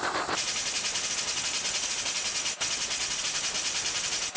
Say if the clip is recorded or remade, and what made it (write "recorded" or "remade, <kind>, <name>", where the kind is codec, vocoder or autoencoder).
recorded